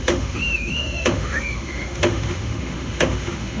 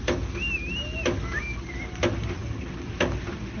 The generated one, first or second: first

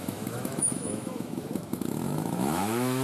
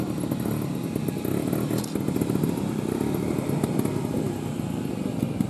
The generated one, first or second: first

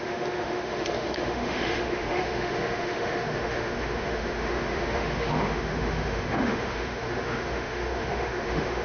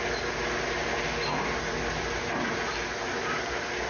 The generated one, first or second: first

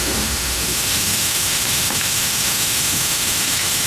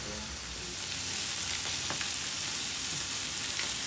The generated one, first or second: first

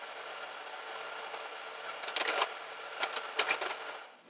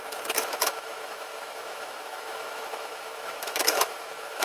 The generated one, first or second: second